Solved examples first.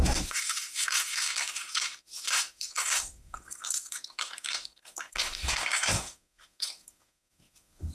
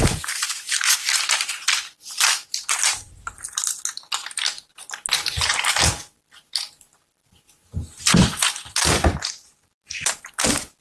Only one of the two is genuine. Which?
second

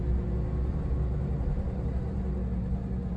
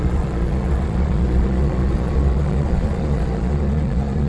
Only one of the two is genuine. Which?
first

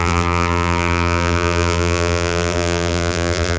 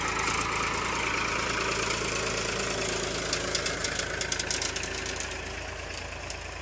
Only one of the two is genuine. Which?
second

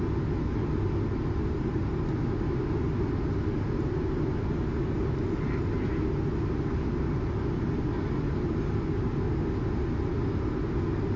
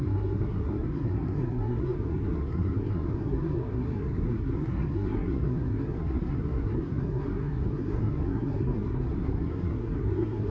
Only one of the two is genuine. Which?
first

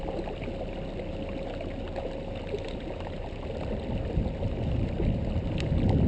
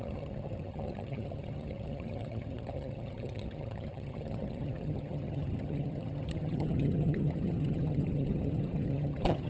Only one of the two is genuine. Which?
first